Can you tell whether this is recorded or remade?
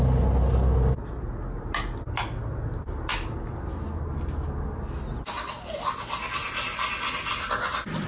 recorded